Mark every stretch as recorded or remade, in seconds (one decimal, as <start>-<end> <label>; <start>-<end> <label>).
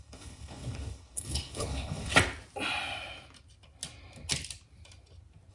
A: 0.0-2.1 remade; 2.1-5.5 recorded